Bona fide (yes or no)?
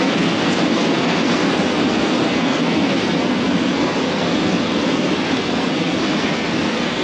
no